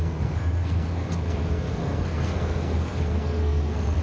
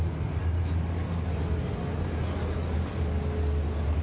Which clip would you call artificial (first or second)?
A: first